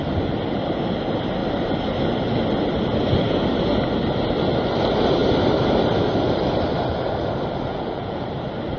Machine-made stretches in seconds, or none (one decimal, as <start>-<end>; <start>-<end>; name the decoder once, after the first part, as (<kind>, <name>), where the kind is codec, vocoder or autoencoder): 7.7-8.3 (vocoder, Vocos)